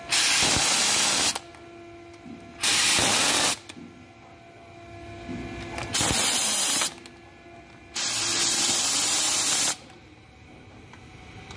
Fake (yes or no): no